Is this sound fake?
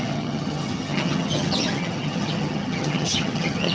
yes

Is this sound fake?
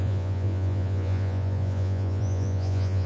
yes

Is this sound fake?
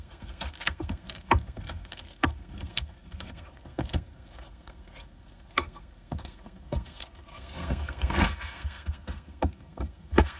yes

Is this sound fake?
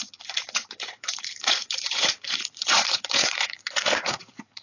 yes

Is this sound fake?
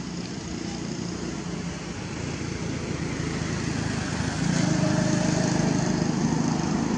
no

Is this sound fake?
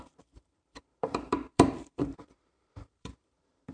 yes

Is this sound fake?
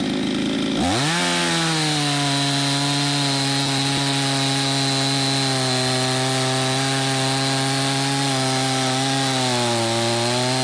no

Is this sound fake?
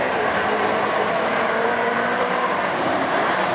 yes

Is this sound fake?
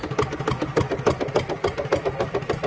no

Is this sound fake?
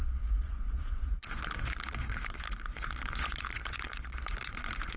yes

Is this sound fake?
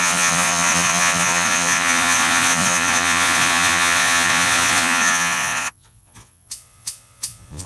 yes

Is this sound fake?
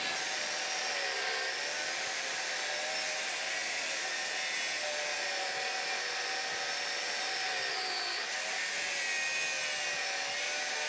no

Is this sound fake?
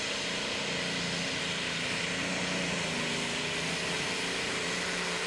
no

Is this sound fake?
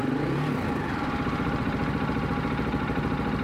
no